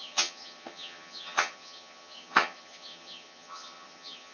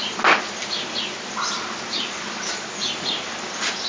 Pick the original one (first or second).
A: second